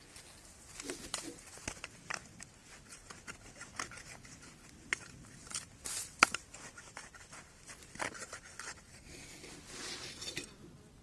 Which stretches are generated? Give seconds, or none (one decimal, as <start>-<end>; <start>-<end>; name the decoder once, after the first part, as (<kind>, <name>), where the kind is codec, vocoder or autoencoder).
8.9-9.5 (codec, SNAC)